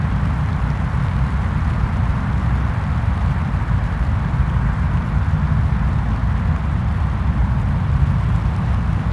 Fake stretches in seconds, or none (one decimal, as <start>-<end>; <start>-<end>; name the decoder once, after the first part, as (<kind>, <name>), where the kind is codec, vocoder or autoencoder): 7.4-8.0 (vocoder, BigVGAN v2)